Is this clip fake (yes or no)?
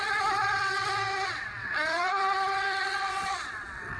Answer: yes